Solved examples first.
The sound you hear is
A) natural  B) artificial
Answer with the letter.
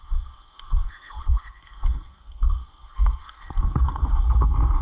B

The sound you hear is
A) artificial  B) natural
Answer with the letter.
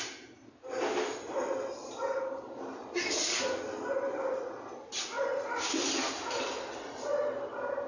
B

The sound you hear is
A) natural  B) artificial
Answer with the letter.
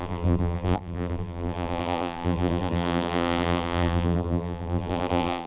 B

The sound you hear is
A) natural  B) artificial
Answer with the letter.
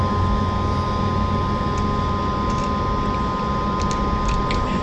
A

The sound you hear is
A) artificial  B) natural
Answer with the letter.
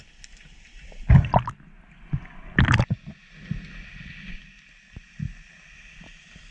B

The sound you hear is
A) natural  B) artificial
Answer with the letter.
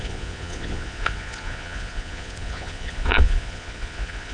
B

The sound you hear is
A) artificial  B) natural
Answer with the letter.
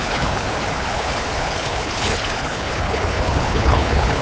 A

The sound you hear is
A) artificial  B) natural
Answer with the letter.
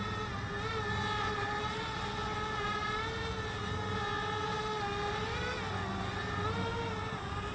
B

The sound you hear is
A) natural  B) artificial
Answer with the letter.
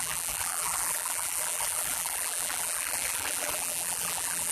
B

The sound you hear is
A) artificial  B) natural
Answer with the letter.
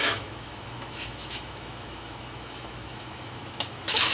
A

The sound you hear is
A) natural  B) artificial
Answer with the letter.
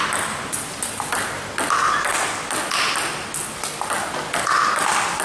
A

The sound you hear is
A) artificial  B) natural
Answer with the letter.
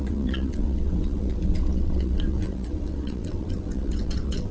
A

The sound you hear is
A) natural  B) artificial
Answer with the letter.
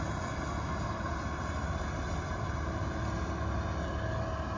A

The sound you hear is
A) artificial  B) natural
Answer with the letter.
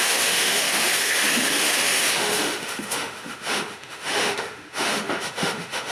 A